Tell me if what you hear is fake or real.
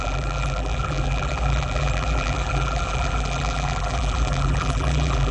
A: fake